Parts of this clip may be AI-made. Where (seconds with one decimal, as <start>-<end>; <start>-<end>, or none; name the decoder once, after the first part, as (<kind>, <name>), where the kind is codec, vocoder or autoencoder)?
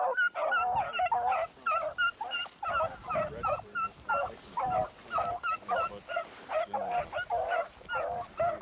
3.0-4.8 (vocoder, BigVGAN v2)